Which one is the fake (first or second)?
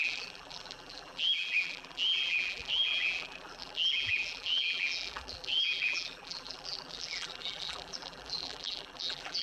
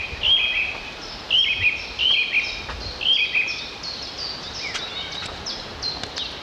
first